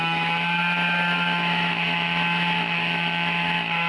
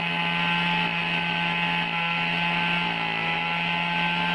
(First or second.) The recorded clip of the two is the second